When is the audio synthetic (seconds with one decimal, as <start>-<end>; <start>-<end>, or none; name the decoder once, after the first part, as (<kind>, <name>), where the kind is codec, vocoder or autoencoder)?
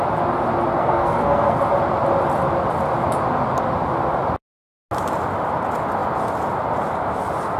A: 0.8-1.6 (codec, SNAC)